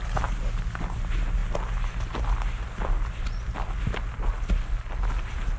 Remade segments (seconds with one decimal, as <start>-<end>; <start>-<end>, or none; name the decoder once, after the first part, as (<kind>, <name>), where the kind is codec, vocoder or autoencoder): none